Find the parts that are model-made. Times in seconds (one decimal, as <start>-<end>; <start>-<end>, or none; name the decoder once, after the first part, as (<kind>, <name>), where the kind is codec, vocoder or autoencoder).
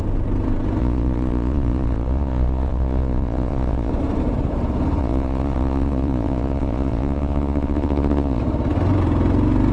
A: 0.8-3.9 (vocoder, Vocos); 5.0-8.4